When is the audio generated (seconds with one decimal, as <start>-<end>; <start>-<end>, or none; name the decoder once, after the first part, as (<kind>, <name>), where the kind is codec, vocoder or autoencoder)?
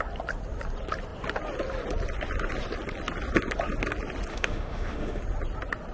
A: 4.3-5.2 (autoencoder, DAC-VAE)